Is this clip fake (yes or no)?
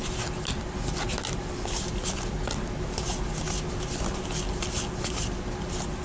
no